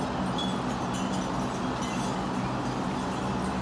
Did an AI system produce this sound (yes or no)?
no